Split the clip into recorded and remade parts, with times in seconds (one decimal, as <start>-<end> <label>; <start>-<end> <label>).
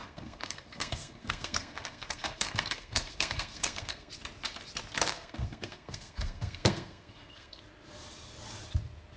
0.0-4.1 remade; 4.1-5.1 recorded; 5.1-7.6 remade; 7.6-9.2 recorded